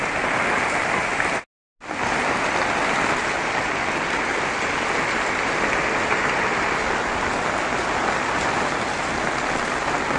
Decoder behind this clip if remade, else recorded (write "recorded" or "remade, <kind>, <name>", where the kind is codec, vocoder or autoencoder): recorded